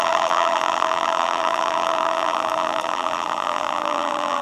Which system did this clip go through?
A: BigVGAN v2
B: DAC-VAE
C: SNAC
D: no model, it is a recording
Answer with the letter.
A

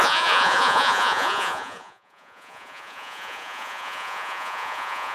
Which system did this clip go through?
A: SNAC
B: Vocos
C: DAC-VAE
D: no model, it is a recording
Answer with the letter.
B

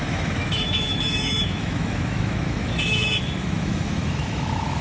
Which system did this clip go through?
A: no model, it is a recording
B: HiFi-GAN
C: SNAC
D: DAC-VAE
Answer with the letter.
D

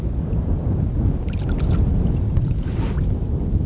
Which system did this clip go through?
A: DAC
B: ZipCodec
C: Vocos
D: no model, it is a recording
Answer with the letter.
D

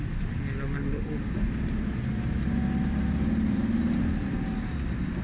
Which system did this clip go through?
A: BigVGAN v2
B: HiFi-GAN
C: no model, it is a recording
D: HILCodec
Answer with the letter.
C